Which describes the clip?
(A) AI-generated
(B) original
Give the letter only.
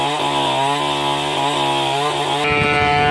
B